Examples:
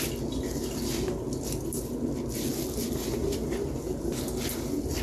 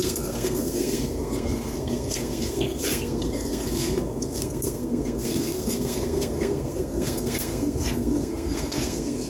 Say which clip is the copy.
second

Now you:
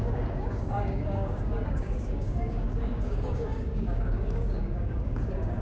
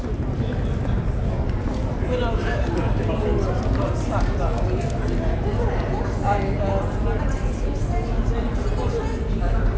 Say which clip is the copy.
first